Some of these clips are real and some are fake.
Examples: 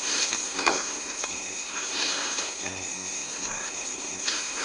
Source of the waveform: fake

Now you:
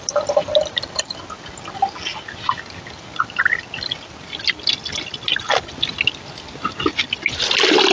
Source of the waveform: real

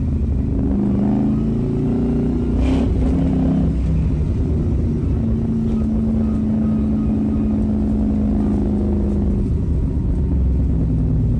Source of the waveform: real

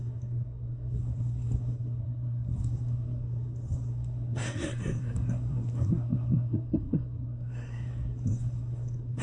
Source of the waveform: fake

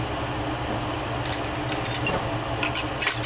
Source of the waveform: real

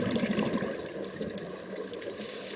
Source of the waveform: real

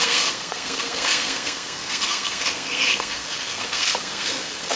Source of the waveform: fake